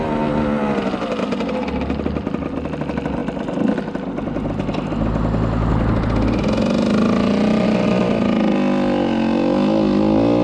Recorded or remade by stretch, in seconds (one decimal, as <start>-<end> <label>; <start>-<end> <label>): 0.0-10.4 recorded